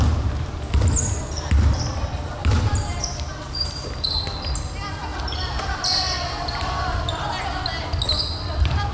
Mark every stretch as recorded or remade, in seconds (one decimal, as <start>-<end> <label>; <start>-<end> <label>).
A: 0.0-2.4 recorded; 2.4-3.9 remade; 3.9-5.1 recorded; 5.1-7.3 remade; 7.3-8.9 recorded